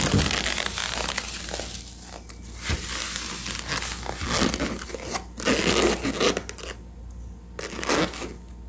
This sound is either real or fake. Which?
real